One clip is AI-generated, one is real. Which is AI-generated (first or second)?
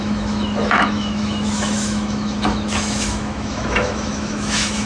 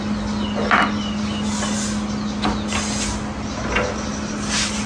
first